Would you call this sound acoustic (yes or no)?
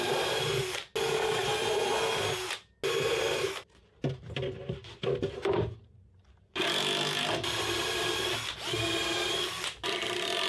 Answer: yes